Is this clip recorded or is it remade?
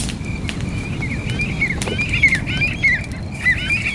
recorded